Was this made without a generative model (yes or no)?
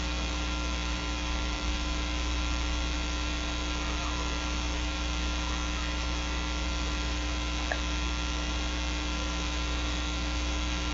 no